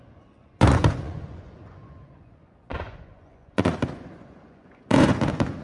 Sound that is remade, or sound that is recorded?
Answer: remade